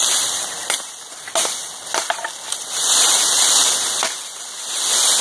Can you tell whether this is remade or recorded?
recorded